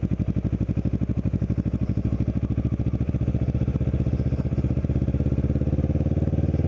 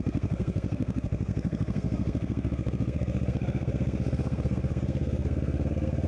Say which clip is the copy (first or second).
second